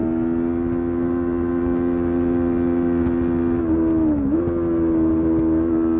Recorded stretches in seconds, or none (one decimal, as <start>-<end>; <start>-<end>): 0.0-6.0